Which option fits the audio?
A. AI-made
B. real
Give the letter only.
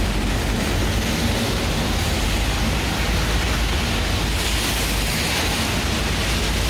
B